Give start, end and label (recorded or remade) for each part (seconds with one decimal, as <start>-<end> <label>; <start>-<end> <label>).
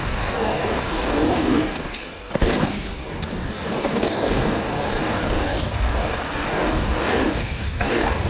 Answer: 0.0-8.3 remade